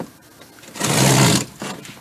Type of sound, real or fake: real